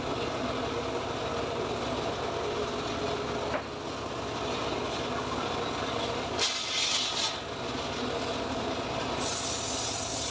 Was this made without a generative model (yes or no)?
yes